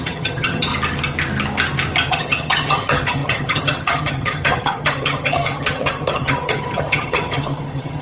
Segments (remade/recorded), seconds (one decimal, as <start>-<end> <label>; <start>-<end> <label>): 0.0-0.7 remade; 0.7-2.1 recorded; 2.1-8.0 remade